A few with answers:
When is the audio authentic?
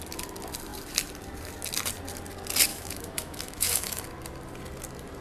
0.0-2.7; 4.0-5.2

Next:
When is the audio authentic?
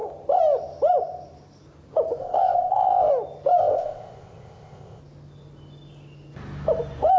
0.0-2.2; 3.1-3.6; 5.0-7.2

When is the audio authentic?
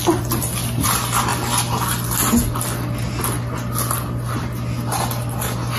0.0-5.8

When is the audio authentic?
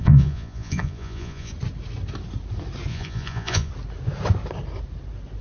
1.5-2.9; 3.7-5.4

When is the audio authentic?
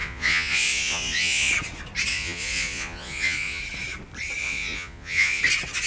1.5-2.1; 3.6-4.4; 5.4-5.9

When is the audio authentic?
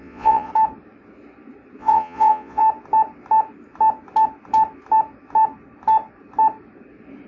0.5-1.8; 2.6-7.3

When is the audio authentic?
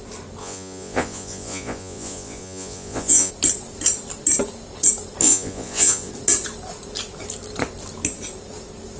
0.0-0.4; 3.3-5.2; 6.1-9.0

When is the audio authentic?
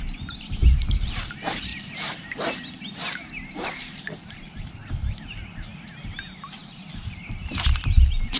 1.7-4.0; 4.8-5.9